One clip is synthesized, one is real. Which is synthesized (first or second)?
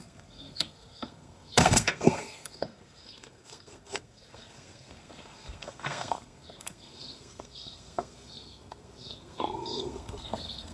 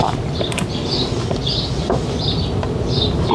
first